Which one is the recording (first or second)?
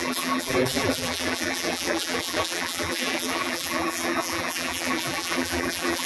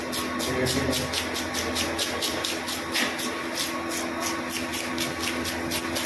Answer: second